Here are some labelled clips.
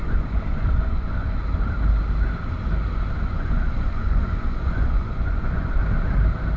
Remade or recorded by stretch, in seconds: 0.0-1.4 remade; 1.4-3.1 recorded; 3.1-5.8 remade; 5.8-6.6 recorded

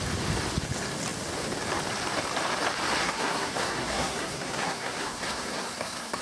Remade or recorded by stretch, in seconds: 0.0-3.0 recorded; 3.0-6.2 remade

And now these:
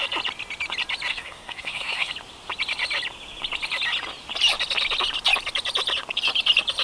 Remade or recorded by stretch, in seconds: 0.0-1.1 recorded; 1.1-2.1 remade; 2.1-6.8 recorded

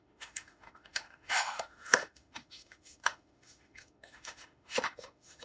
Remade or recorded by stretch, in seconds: 0.0-5.4 remade

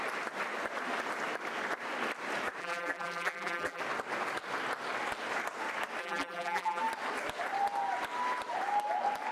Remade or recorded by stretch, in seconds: 0.0-2.6 recorded; 2.6-3.8 remade; 3.8-6.0 recorded; 6.0-6.8 remade; 6.8-9.3 recorded

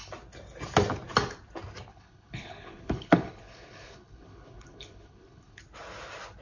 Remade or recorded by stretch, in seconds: 0.0-1.9 recorded; 1.9-5.6 remade; 5.6-6.4 recorded

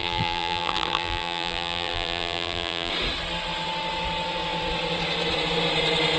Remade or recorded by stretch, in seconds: 0.0-2.9 remade; 2.9-6.2 recorded